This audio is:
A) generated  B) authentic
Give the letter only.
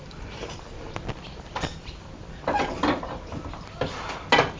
B